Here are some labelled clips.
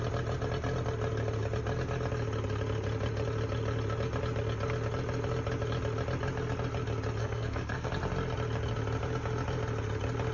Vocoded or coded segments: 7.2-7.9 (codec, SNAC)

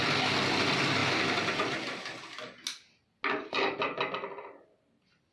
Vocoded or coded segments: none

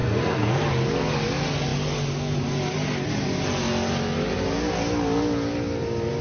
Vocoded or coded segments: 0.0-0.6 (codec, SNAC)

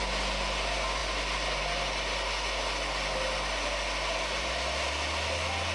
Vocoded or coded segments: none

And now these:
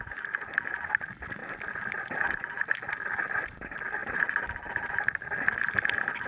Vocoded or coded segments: none